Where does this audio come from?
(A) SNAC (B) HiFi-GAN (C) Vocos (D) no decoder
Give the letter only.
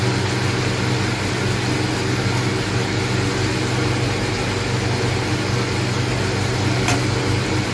D